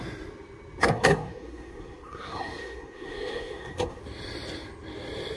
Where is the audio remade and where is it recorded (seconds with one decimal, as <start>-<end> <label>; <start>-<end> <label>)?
0.0-0.8 recorded; 0.8-4.0 remade; 4.0-5.4 recorded